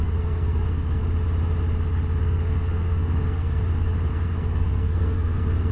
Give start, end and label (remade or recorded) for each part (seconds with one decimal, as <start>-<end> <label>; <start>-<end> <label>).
0.0-1.0 remade; 1.0-2.2 recorded; 2.2-3.6 remade; 3.6-4.1 recorded; 4.1-5.7 remade